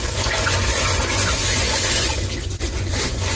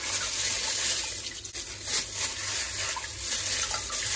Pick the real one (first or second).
second